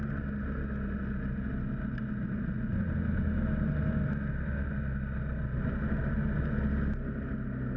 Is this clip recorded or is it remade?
recorded